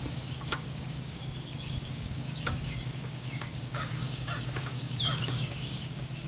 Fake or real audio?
fake